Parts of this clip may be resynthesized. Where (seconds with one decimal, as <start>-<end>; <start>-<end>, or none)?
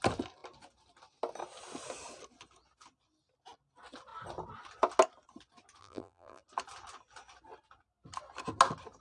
5.8-6.4